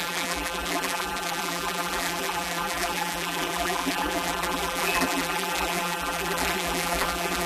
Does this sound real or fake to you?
fake